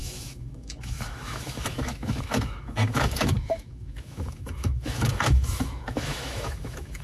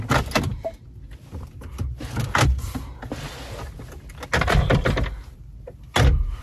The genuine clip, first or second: second